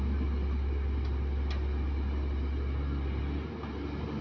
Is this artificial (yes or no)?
no